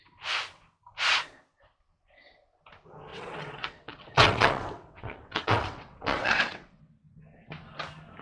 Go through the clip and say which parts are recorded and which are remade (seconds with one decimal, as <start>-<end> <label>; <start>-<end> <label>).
0.0-3.1 recorded; 3.1-6.9 remade; 6.9-8.2 recorded